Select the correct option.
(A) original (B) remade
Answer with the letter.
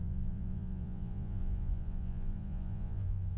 B